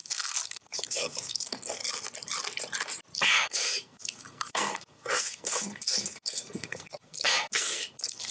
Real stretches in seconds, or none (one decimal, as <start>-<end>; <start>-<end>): 1.8-3.2